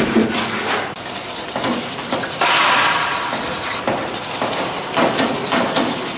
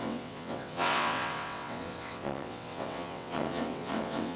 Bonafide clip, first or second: first